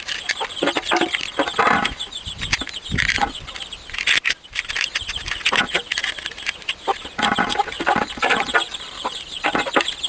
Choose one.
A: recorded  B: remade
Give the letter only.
B